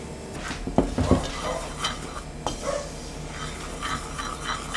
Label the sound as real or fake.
real